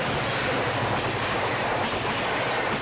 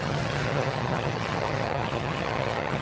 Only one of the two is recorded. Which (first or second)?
first